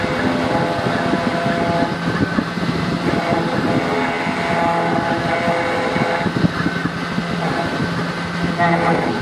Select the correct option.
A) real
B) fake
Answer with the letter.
A